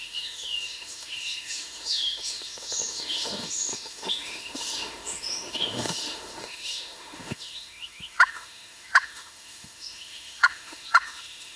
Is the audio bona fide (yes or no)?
no